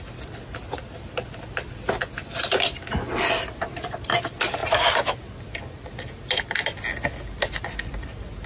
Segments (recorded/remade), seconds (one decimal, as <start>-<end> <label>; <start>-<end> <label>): 0.0-8.5 recorded